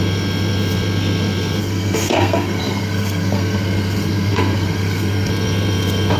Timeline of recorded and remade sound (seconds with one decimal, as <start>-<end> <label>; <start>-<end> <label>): 0.0-1.6 recorded; 1.6-5.3 remade; 5.3-6.2 recorded